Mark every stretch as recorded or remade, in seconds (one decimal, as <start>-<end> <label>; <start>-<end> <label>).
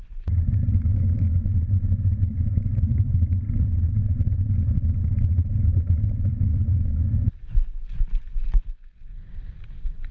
0.0-0.9 remade; 0.9-2.7 recorded; 2.7-4.0 remade; 4.0-5.2 recorded; 5.2-6.3 remade; 6.3-7.8 recorded; 7.8-8.3 remade; 8.3-10.1 recorded